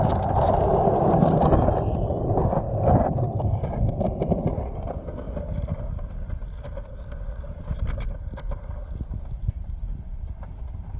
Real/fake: real